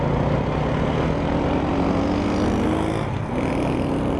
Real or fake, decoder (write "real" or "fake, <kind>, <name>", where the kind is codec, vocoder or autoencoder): real